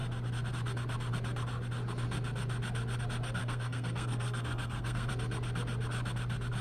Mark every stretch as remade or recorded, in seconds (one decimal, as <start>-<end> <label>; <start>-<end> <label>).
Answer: 0.0-3.4 recorded; 3.4-5.1 remade; 5.1-6.6 recorded